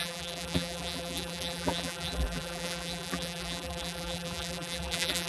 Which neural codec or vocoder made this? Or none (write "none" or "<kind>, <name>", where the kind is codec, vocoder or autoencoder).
vocoder, BigVGAN v2